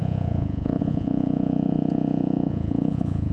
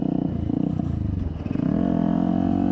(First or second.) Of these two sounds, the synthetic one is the first